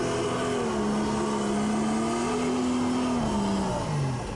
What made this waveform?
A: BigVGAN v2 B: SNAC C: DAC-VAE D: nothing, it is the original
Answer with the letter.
D